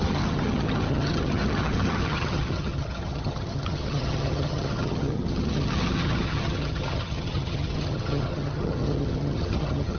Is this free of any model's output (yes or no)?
no